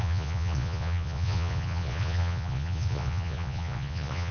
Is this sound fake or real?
fake